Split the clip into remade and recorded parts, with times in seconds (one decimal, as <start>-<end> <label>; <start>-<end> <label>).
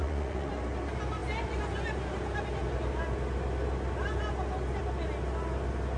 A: 0.0-0.5 remade; 0.5-6.0 recorded